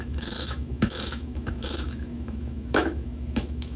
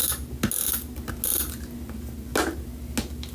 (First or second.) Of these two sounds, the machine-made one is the first